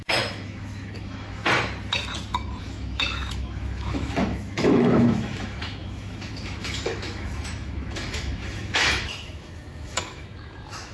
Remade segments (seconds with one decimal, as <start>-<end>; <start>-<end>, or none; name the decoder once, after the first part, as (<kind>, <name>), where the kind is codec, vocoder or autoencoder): 0.0-1.4 (autoencoder, DAC-VAE); 2.6-10.9